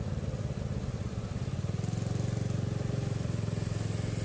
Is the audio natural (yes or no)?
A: yes